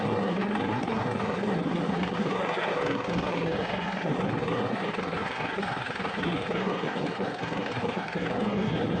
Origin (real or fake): fake